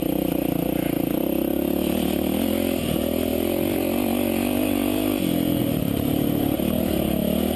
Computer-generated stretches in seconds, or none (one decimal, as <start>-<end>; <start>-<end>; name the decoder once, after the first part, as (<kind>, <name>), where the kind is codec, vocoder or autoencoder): none